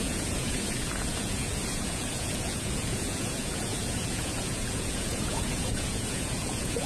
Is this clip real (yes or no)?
no